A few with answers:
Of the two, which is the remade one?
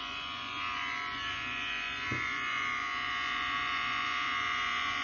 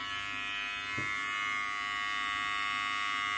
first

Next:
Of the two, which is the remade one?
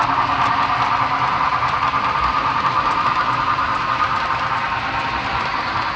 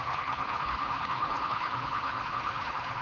second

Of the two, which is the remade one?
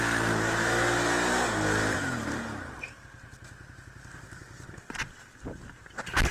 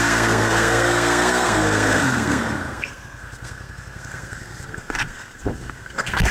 second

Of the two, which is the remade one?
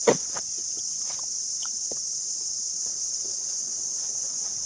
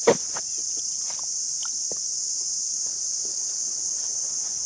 first